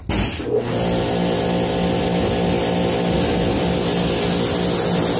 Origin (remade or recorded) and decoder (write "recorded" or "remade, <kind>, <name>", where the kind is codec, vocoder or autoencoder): recorded